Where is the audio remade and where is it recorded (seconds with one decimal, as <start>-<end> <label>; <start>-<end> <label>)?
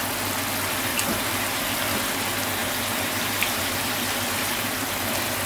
0.0-0.9 recorded; 0.9-1.6 remade; 1.6-2.6 recorded; 2.6-5.0 remade; 5.0-5.5 recorded